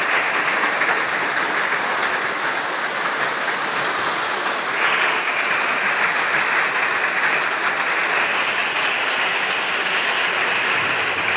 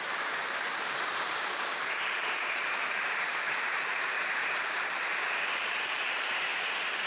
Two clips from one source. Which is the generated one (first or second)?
second